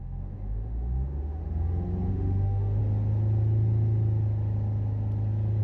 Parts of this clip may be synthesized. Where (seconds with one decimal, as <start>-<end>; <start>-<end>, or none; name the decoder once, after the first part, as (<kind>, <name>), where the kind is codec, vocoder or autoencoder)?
0.0-1.4 (autoencoder, DAC-VAE); 2.1-2.8